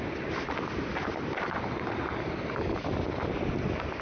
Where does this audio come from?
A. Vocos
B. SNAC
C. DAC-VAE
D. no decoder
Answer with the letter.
D